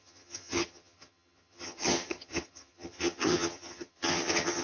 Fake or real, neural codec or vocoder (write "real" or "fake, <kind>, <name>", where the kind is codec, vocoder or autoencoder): fake, vocoder, HiFi-GAN